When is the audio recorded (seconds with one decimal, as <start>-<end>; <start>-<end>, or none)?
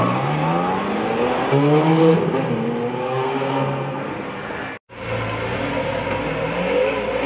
0.0-3.0; 4.1-7.3